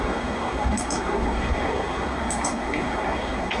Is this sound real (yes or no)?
no